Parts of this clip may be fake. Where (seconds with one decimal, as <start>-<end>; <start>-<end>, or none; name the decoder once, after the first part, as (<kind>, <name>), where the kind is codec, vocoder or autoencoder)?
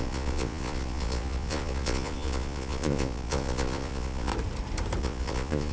0.0-4.3 (vocoder, Vocos); 5.0-5.7